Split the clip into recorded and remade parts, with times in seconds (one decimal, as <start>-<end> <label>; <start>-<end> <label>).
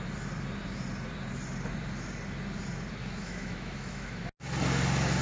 0.0-3.0 recorded; 3.0-4.2 remade; 4.2-5.2 recorded